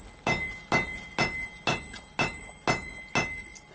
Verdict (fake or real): real